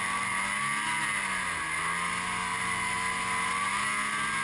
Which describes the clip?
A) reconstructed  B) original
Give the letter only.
B